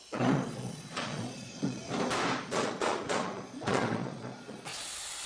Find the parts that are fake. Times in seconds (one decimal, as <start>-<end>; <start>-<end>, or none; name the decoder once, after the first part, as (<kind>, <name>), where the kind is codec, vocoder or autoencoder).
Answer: 0.0-1.8 (vocoder, Vocos); 2.4-4.7